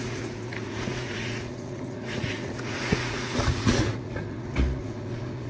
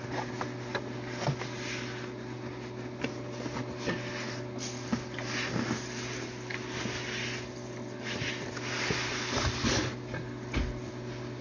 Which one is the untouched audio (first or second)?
second